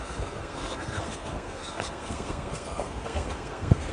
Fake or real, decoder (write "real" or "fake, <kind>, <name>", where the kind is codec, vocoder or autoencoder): fake, codec, SNAC